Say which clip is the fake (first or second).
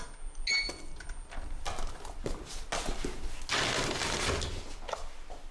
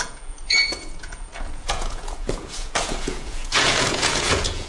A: second